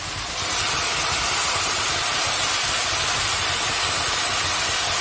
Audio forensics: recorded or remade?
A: recorded